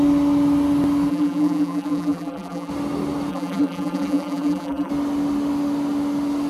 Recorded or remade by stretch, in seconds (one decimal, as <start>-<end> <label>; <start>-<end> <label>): 0.0-1.1 recorded; 1.1-2.7 remade; 2.7-3.3 recorded; 3.3-4.9 remade; 4.9-6.5 recorded